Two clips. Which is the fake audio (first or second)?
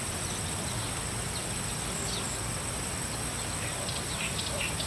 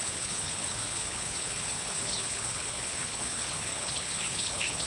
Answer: second